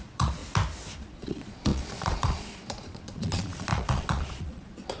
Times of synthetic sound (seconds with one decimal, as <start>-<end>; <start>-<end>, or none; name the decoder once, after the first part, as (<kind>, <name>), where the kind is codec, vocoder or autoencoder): 0.0-0.4 (vocoder, Vocos); 1.0-5.0